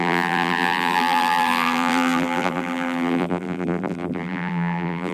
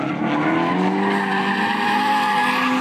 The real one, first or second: second